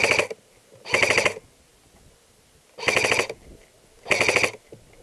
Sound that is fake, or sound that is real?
real